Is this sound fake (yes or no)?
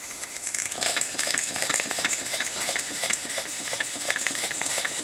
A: yes